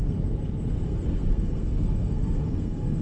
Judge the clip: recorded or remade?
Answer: remade